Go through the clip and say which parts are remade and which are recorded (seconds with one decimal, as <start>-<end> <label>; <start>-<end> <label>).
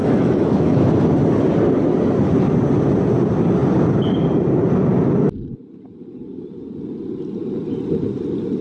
0.0-0.9 remade; 0.9-8.6 recorded